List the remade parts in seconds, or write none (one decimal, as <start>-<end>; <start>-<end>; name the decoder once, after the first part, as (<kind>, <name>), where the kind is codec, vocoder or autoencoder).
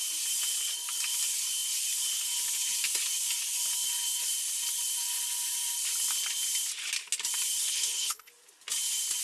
7.6-8.3 (codec, HILCodec)